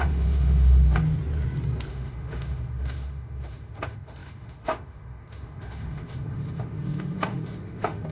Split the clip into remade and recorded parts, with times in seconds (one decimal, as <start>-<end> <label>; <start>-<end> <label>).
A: 0.0-1.0 remade; 1.0-1.9 recorded; 1.9-8.1 remade